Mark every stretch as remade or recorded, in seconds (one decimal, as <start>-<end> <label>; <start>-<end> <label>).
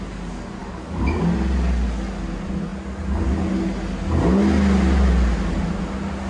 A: 0.0-0.6 recorded; 0.6-1.2 remade; 1.2-6.3 recorded